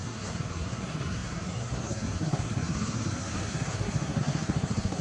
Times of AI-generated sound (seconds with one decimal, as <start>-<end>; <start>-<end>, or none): 0.0-5.0